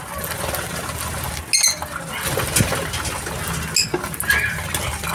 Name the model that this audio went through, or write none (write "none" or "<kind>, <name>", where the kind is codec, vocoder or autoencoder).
none